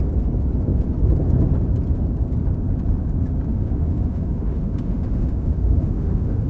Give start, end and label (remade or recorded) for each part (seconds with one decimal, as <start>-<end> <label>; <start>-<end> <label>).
0.0-3.5 recorded; 3.5-6.5 remade